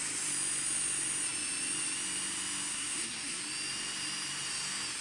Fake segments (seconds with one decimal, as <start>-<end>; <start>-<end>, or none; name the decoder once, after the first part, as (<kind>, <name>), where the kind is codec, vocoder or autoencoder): 2.7-3.4 (codec, SNAC)

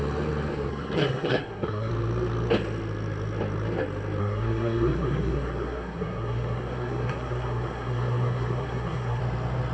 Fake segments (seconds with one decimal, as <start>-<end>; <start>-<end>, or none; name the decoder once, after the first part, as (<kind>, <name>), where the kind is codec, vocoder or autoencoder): 0.7-1.9 (codec, SNAC); 4.2-9.2

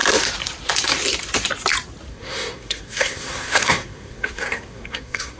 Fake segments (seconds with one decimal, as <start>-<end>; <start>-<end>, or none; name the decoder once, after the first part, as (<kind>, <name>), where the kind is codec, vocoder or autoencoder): 2.1-5.4 (codec, SNAC)

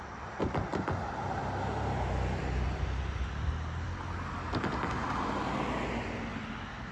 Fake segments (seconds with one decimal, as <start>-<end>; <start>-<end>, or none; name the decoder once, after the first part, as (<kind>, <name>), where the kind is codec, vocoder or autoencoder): none

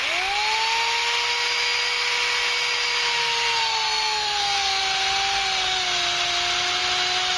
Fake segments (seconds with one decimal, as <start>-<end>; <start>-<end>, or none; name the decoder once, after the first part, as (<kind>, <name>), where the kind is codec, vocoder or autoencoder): 3.2-4.8 (codec, SNAC)

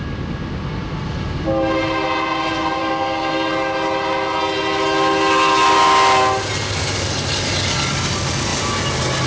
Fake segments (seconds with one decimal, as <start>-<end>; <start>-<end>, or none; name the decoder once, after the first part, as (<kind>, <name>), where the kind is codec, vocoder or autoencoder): 2.8-3.5 (codec, SNAC)

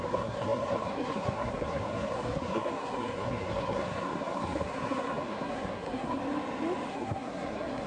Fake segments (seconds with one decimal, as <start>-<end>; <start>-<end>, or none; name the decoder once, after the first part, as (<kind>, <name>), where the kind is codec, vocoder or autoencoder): 0.0-6.2 (codec, SNAC); 6.9-7.9

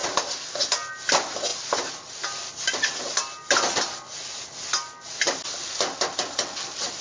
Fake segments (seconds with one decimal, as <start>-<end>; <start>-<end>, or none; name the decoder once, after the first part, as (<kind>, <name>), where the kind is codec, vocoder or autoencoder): none